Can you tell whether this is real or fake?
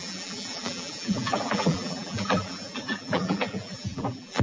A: fake